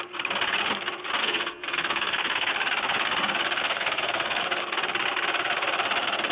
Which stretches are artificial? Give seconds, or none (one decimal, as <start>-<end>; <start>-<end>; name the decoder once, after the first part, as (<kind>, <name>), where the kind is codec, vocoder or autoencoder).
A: 1.2-2.5 (codec, SNAC); 3.6-4.4

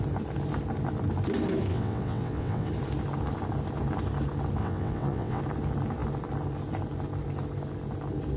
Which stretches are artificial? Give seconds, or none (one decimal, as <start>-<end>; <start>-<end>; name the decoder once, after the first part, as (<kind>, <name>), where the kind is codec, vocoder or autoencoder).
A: 1.7-2.7 (vocoder, WaveNeXt); 4.6-5.4

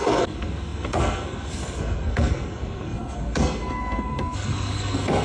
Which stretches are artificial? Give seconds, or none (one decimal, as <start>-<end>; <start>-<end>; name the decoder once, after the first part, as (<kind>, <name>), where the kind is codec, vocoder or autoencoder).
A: 0.0-5.2 (codec, SNAC)

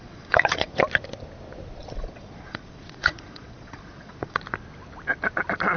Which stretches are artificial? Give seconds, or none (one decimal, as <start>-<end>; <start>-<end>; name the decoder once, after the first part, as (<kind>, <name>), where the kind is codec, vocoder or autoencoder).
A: 0.0-0.8 (vocoder, Vocos); 1.8-4.4

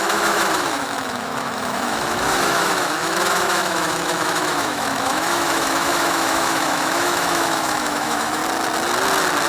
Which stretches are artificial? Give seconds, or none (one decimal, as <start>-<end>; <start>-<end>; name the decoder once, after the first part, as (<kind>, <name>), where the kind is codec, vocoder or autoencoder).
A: 0.0-8.4 (autoencoder, DAC-VAE)

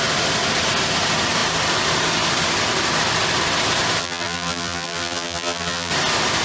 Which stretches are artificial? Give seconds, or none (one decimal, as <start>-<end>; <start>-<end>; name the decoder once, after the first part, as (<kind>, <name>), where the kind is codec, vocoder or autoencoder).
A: 4.0-5.9 (vocoder, BigVGAN v2)

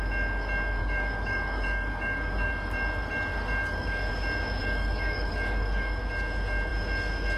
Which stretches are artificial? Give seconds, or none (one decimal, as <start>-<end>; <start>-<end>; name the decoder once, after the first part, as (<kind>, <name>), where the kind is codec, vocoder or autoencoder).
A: 0.8-2.5 (codec, DAC); 3.6-4.1; 4.6-6.0